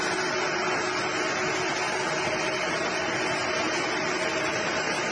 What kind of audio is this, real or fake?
real